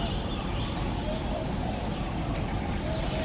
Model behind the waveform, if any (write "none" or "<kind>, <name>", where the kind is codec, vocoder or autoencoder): none